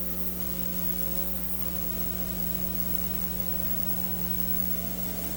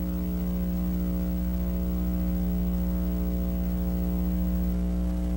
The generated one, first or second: first